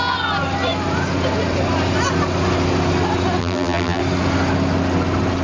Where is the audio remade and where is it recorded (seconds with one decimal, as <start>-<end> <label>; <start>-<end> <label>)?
0.0-3.4 recorded; 3.4-4.0 remade; 4.0-5.4 recorded